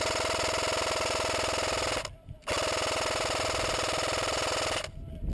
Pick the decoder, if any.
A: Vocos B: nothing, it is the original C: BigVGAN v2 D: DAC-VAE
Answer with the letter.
B